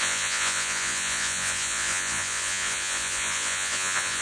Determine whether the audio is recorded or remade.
remade